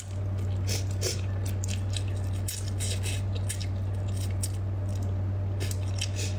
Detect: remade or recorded recorded